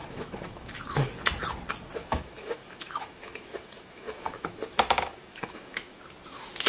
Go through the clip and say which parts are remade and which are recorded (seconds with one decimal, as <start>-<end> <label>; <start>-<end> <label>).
0.0-1.1 remade; 1.1-2.0 recorded; 2.0-6.0 remade; 6.0-6.7 recorded